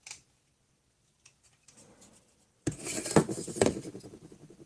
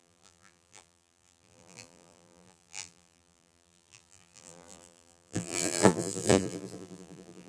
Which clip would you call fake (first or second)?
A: second